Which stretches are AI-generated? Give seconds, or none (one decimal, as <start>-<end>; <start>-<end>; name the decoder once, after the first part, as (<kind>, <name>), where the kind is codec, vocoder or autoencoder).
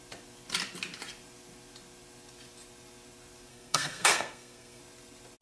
3.5-4.8 (codec, SNAC)